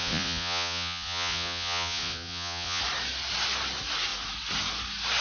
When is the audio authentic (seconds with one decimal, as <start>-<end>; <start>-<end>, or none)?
2.8-5.2